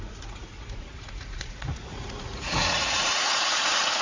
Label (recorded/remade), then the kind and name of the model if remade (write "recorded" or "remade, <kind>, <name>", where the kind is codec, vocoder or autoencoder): remade, vocoder, Vocos